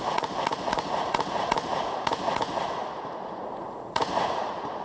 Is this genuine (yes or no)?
no